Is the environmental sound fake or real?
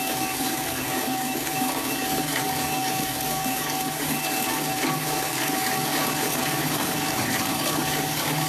fake